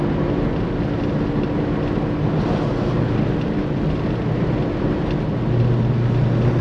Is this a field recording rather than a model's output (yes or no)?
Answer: yes